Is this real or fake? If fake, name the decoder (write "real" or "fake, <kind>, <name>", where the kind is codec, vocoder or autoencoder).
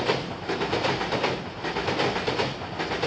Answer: real